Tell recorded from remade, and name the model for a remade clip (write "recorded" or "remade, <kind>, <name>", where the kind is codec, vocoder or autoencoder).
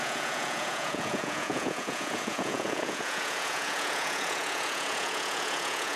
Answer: remade, vocoder, Vocos